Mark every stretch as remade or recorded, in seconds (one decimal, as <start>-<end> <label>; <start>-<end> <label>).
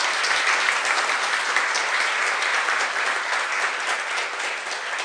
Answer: 0.0-5.0 recorded